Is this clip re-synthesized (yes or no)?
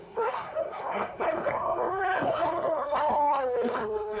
yes